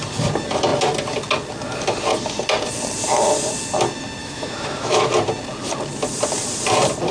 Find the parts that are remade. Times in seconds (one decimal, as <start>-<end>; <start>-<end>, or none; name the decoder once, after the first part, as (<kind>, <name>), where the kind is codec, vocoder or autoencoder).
4.2-5.1 (autoencoder, DAC-VAE)